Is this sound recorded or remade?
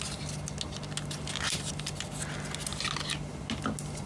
recorded